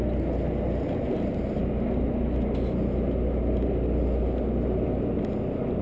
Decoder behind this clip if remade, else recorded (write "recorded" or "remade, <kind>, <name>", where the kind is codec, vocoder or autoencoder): recorded